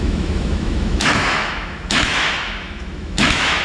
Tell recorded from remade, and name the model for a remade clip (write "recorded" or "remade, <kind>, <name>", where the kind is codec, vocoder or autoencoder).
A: remade, autoencoder, DAC-VAE